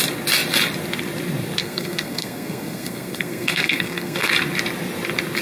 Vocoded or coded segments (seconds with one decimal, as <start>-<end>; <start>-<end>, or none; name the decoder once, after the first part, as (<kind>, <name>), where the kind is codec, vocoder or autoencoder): 1.6-4.3 (codec, SNAC)